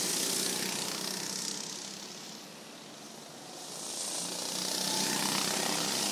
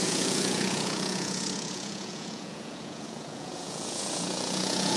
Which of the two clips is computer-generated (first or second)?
second